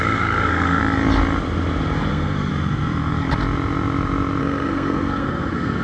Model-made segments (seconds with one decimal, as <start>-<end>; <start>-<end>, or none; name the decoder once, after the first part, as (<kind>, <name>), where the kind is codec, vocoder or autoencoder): 0.0-0.8 (codec, SNAC); 2.1-2.5; 4.4-5.8